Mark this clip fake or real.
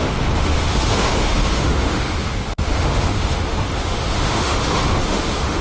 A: fake